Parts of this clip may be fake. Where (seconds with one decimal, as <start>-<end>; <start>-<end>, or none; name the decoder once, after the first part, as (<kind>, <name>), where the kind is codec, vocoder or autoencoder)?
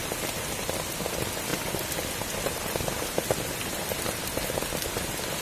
none